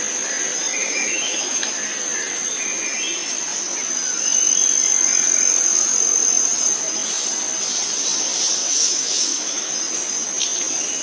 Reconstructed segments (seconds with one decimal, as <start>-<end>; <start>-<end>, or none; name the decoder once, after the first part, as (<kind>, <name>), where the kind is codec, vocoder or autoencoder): 0.8-1.7 (autoencoder, DAC-VAE); 8.6-9.7